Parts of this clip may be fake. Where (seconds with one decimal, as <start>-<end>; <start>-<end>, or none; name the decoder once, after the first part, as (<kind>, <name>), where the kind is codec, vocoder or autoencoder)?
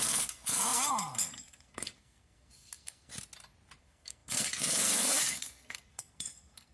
0.0-3.1 (codec, SNAC); 3.8-6.7